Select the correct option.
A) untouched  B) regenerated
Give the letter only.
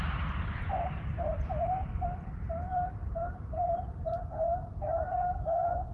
B